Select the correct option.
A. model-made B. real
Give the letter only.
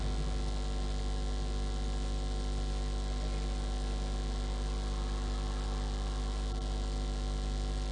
B